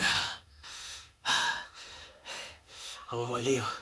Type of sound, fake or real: fake